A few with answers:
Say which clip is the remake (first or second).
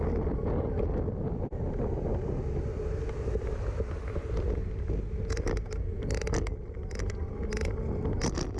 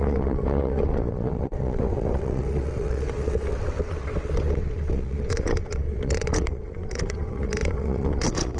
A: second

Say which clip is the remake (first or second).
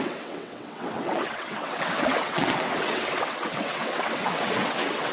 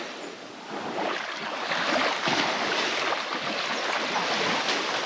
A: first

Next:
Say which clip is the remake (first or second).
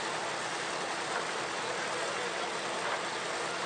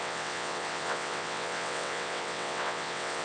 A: second